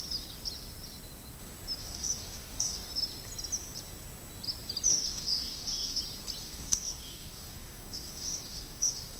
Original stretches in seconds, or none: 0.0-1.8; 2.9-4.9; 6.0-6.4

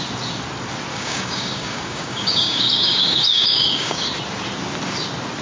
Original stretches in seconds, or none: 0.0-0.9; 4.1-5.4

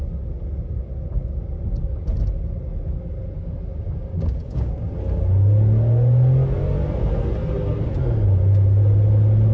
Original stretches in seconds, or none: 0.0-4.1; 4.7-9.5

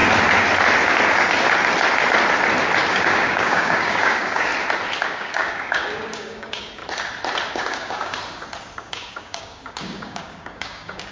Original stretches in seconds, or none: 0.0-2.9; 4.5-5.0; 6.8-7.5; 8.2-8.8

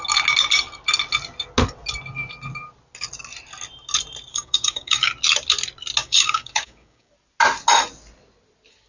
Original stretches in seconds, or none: 0.0-4.3; 5.1-6.0; 7.1-8.9

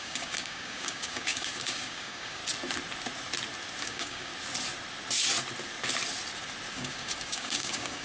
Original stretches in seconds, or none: 2.4-3.8; 4.3-6.7